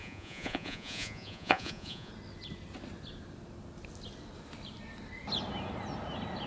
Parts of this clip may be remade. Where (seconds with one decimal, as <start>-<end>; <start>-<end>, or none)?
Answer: 0.0-2.1